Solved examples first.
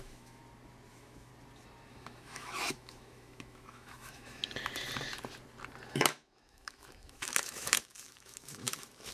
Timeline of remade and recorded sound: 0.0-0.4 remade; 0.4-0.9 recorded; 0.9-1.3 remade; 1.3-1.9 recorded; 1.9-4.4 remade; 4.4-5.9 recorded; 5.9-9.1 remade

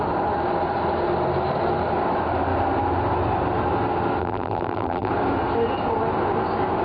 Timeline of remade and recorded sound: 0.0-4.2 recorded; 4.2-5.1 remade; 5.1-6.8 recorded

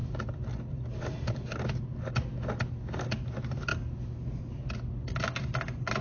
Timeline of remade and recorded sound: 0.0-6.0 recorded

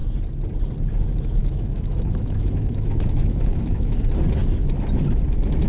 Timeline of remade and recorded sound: 0.0-1.4 recorded; 1.4-4.0 remade; 4.0-5.7 recorded

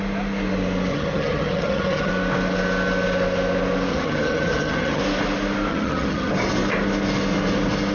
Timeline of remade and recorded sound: 0.0-0.9 recorded; 0.9-2.1 remade; 2.1-3.9 recorded; 3.9-5.0 remade; 5.0-5.7 recorded; 5.7-6.3 remade; 6.3-7.9 recorded

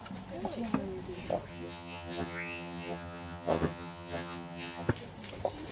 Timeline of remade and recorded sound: 0.0-1.5 recorded; 1.5-4.9 remade; 4.9-5.7 recorded